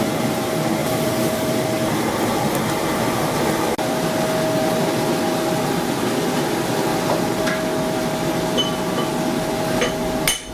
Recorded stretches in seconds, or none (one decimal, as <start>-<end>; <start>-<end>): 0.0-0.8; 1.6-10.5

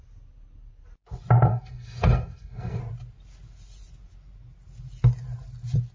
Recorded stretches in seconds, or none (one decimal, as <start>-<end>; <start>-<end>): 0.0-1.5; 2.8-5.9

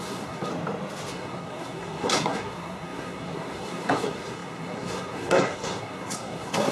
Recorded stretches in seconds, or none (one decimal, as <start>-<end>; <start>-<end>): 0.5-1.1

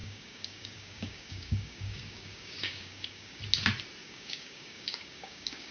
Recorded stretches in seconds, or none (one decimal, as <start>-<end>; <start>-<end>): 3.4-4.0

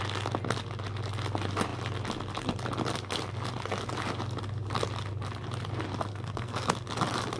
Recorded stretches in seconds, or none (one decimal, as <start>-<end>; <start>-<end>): 0.0-6.1; 6.7-7.4